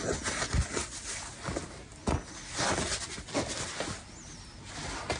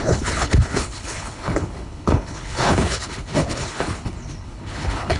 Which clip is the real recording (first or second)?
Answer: first